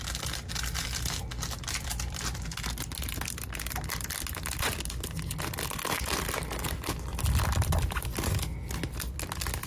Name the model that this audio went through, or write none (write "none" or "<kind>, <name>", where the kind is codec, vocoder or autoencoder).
none